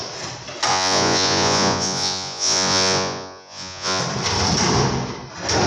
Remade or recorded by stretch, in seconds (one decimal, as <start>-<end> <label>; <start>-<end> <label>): 0.0-0.7 recorded; 0.7-4.0 remade; 4.0-5.7 recorded